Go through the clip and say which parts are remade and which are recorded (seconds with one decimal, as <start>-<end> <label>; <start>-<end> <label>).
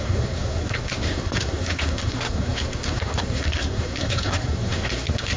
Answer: 0.0-5.4 remade